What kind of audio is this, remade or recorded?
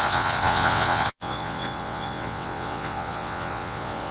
remade